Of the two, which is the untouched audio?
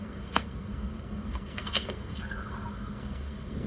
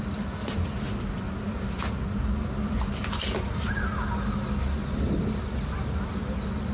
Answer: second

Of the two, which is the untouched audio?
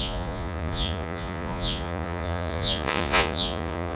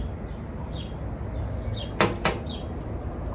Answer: second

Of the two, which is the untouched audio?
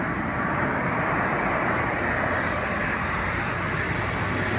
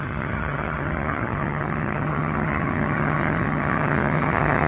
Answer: first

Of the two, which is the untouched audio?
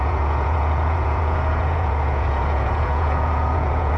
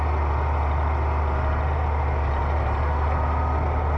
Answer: second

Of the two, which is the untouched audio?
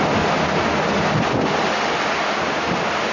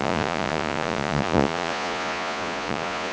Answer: first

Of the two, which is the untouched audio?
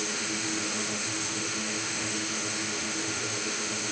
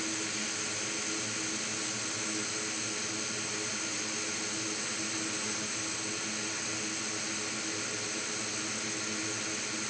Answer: second